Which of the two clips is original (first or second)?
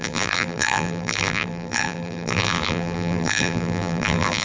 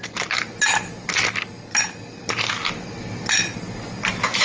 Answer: second